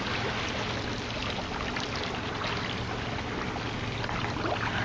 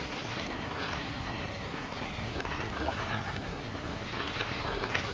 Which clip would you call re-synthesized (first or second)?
second